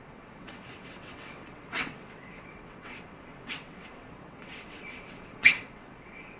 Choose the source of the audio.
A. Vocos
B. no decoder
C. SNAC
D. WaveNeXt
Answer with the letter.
D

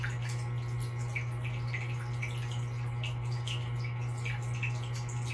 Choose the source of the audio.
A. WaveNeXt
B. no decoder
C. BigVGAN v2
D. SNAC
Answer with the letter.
B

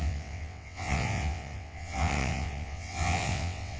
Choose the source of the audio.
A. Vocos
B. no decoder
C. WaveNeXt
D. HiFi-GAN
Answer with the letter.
C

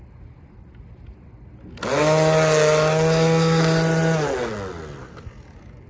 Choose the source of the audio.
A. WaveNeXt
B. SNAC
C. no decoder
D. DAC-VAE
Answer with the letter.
C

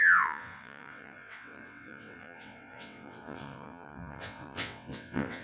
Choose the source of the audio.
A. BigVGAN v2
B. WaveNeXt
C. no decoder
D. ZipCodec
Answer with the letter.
B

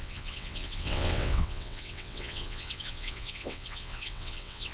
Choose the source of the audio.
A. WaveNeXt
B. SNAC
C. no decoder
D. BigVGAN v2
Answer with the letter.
A